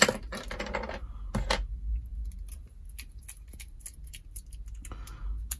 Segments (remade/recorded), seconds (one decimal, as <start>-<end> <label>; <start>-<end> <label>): 0.0-5.6 recorded